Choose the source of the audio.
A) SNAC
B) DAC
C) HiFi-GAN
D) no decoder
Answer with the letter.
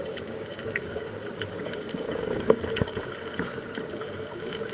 B